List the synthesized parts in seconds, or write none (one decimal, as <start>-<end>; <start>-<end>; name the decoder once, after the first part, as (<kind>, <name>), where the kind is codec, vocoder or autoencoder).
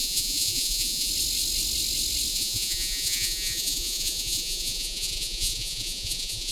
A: 0.0-1.1 (vocoder, Vocos); 2.3-6.5